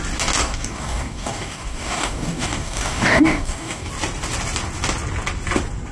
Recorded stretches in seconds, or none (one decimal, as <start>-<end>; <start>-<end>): 0.0-0.4; 3.9-5.9